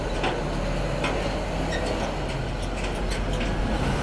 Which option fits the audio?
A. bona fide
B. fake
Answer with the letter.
A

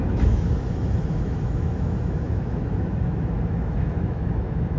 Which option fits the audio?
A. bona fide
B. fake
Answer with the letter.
B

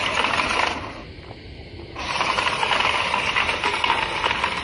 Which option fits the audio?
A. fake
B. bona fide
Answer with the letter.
B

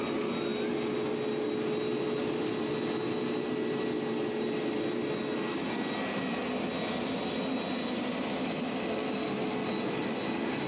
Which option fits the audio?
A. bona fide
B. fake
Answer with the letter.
A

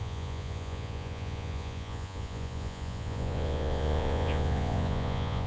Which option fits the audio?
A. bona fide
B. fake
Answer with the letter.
B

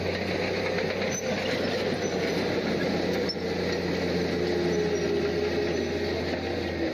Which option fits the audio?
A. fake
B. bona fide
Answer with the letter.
B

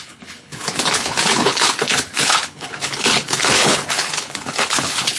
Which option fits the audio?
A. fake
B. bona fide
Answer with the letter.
A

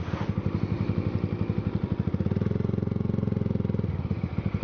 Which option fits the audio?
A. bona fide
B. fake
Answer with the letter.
A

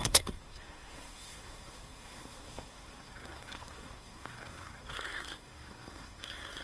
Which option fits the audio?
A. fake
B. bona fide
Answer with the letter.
A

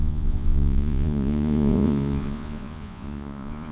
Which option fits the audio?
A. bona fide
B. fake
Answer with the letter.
B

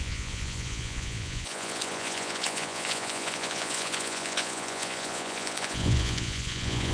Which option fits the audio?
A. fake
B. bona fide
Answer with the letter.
A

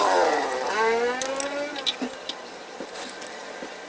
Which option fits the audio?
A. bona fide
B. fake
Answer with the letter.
A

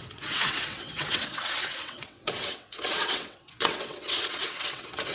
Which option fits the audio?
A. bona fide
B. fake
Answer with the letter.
B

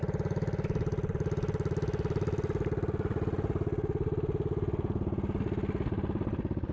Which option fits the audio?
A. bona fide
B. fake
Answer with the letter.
A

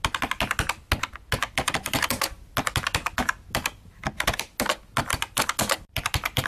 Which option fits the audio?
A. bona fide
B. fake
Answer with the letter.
A